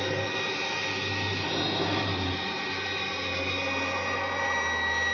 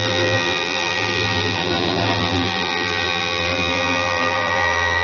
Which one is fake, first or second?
second